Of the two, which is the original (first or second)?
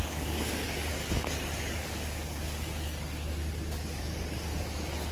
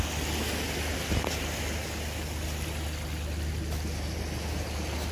second